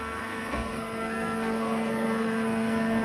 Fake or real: fake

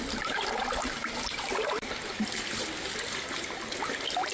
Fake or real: real